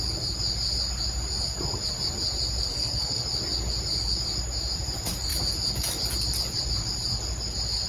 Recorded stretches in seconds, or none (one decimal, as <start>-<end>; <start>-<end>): 0.0-2.7; 3.2-7.9